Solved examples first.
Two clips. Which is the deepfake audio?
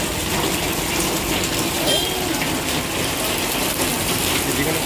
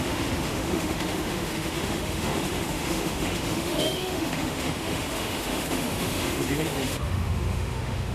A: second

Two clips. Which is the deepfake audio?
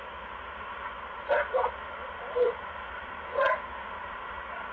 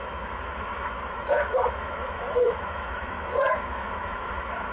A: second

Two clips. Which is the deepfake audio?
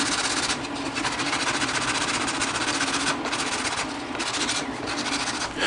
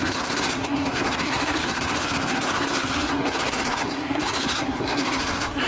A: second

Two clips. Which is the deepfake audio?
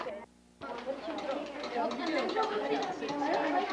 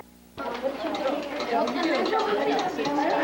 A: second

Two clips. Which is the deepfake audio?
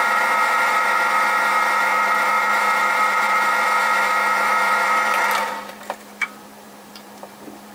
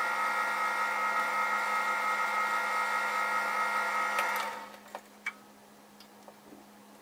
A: first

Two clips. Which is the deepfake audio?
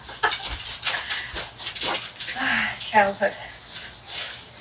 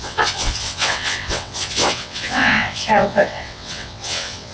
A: second